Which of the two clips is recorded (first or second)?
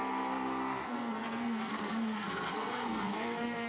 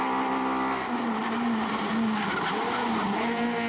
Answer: second